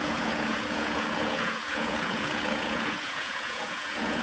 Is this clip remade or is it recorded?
remade